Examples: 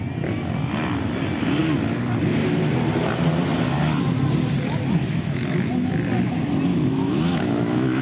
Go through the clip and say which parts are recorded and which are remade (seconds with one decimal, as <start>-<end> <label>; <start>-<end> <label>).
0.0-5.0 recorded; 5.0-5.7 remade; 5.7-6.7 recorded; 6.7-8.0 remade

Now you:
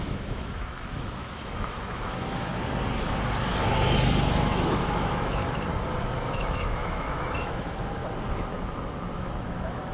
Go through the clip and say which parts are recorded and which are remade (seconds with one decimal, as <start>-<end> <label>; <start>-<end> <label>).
0.0-2.5 remade; 2.5-4.4 recorded; 4.4-5.4 remade; 5.4-6.0 recorded; 6.0-8.0 remade; 8.0-9.2 recorded; 9.2-9.9 remade

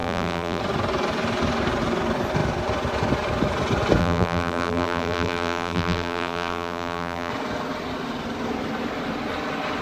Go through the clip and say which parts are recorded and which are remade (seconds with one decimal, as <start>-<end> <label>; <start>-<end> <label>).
0.0-0.6 remade; 0.6-4.0 recorded; 4.0-7.3 remade; 7.3-9.8 recorded